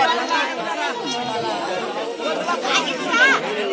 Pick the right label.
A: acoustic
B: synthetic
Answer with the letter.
A